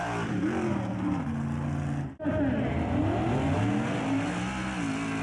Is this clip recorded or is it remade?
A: recorded